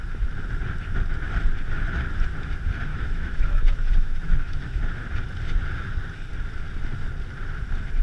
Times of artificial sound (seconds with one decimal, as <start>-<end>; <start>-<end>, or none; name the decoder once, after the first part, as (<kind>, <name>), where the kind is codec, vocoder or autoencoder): 2.9-4.8 (autoencoder, DAC-VAE)